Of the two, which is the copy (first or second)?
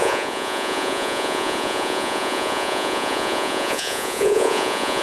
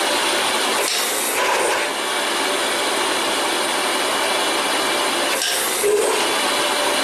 first